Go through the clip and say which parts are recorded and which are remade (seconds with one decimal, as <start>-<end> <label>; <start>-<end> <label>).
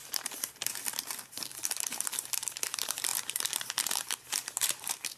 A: 0.0-5.2 remade